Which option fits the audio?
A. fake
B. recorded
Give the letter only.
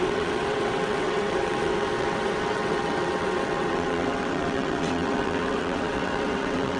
A